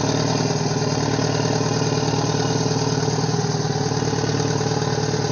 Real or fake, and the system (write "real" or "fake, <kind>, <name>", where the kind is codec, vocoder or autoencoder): real